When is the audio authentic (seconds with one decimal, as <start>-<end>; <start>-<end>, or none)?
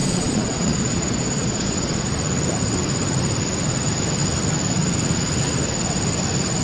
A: 2.1-6.6